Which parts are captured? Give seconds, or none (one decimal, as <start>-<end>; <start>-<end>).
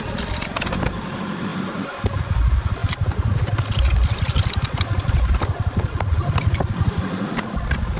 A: 0.0-8.0